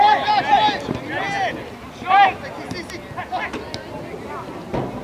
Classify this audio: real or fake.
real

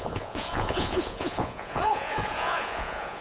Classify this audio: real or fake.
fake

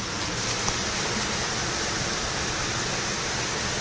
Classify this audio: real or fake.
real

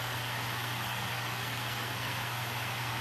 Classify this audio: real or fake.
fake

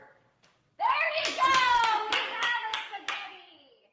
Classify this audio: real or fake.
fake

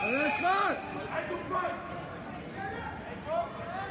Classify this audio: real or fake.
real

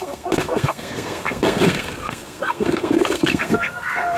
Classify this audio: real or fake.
fake